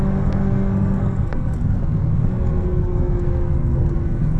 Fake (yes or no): yes